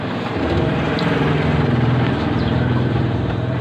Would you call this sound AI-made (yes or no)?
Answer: yes